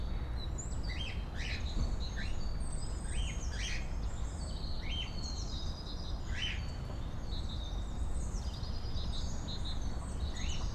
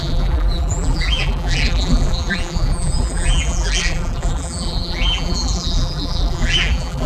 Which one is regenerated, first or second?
second